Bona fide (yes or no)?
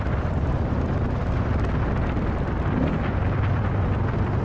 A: yes